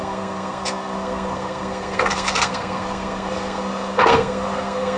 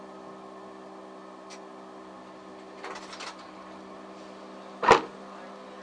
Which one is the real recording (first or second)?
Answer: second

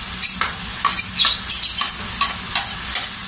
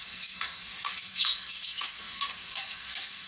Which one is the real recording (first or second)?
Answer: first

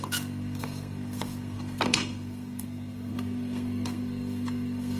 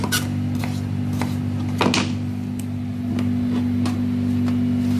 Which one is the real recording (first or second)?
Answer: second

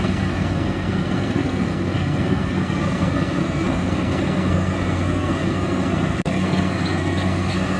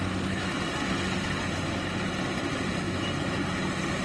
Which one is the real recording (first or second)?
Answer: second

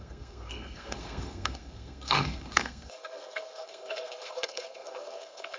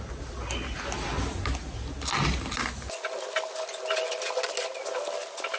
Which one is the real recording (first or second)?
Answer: second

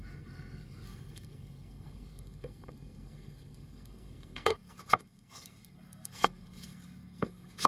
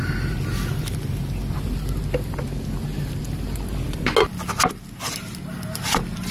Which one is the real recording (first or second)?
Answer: second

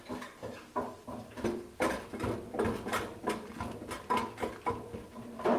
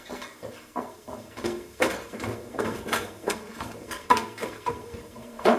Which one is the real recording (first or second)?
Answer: first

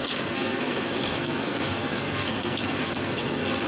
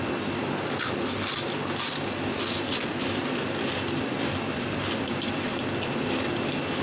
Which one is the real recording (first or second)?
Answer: second